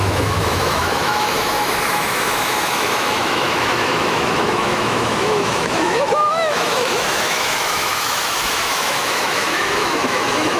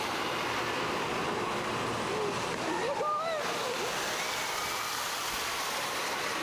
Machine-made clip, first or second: first